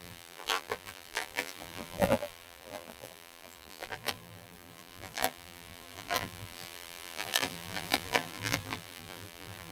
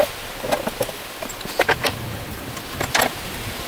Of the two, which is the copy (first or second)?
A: first